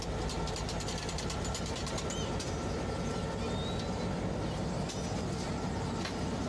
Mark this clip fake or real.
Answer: real